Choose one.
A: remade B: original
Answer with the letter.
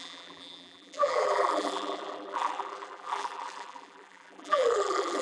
A